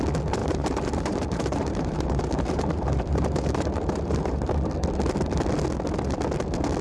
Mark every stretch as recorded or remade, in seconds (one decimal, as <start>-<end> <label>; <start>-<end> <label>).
0.0-0.4 recorded; 0.4-4.5 remade; 4.5-6.8 recorded